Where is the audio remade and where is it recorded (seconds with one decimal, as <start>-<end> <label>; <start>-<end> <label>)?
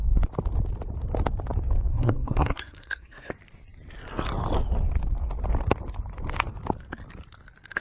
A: 0.0-1.9 recorded; 1.9-3.3 remade; 3.3-7.8 recorded